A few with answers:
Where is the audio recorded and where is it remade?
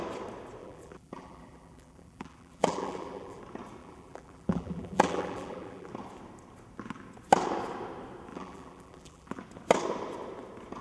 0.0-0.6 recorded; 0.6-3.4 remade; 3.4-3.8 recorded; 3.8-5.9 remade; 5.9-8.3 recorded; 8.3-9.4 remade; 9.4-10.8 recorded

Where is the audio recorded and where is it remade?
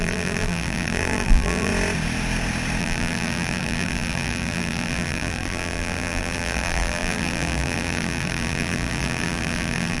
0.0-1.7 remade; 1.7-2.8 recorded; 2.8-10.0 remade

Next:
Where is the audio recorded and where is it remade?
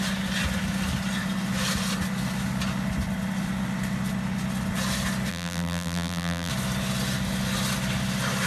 0.0-5.3 recorded; 5.3-6.5 remade; 6.5-8.5 recorded